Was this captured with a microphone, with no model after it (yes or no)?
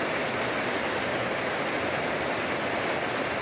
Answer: yes